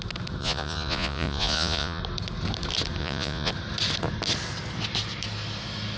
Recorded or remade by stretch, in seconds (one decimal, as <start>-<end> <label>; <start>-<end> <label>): 0.0-0.4 recorded; 0.4-2.0 remade; 2.0-3.0 recorded; 3.0-3.5 remade; 3.5-6.0 recorded